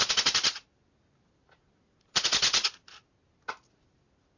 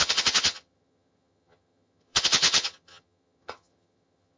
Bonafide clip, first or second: first